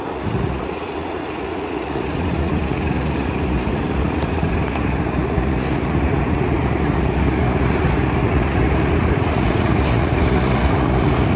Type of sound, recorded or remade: remade